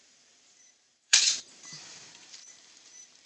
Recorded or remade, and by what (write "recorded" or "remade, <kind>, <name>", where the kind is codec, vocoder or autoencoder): remade, vocoder, BigVGAN v2